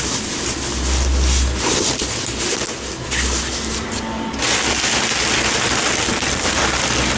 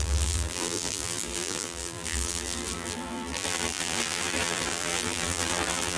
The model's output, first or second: second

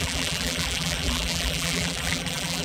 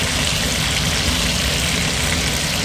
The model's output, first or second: first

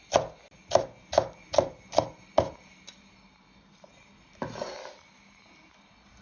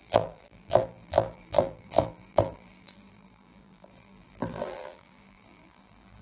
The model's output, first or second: second